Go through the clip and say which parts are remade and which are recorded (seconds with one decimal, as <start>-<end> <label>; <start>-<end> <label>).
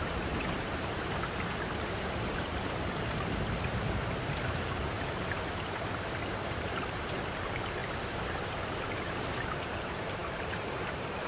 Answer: 0.0-7.8 remade; 7.8-8.9 recorded; 8.9-11.3 remade